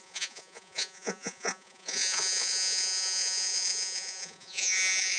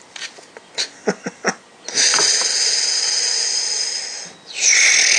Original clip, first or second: second